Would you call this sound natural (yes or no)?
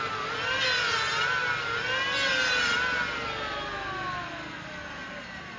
yes